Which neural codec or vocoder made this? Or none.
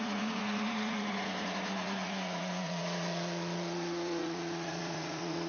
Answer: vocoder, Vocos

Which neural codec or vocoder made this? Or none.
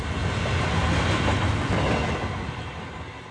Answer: none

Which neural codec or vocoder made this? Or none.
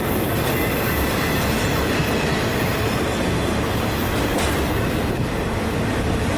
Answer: vocoder, BigVGAN v2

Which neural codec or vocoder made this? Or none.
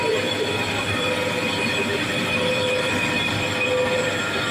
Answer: vocoder, BigVGAN v2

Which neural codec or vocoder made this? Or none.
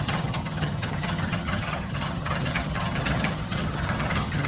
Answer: vocoder, HiFi-GAN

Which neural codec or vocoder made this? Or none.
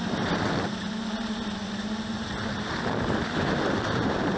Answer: vocoder, BigVGAN v2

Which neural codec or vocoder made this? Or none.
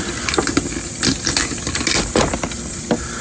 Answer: none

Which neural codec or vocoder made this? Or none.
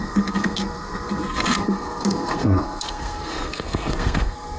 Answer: codec, SNAC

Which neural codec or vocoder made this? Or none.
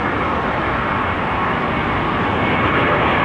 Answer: none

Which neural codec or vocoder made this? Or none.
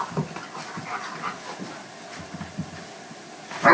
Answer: none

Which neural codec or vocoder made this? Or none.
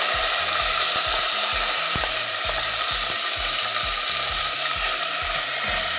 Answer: vocoder, BigVGAN v2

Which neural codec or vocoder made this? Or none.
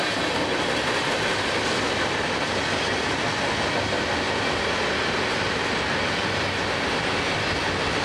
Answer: none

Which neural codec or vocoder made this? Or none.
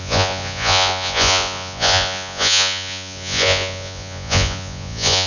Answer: vocoder, Vocos